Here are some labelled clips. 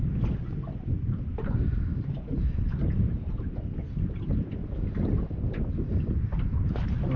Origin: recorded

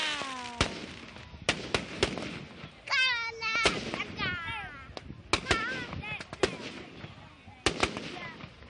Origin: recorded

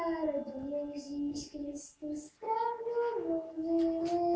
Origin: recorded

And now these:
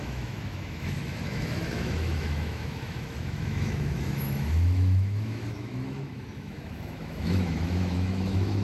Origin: remade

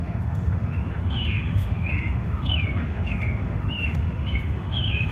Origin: remade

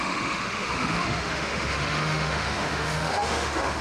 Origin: remade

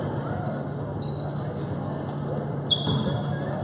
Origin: recorded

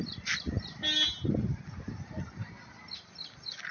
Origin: recorded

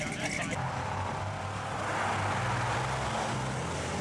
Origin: recorded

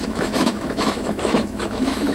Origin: remade